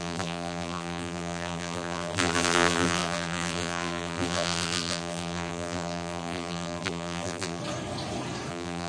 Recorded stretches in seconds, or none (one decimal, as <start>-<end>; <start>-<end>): 7.6-8.5